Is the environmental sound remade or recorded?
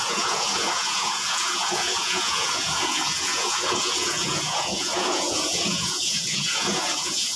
remade